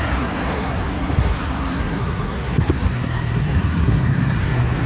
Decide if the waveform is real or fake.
fake